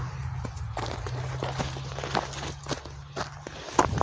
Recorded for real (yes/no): yes